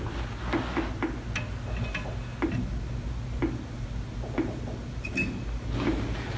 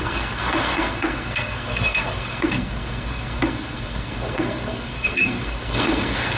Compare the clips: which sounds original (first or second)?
first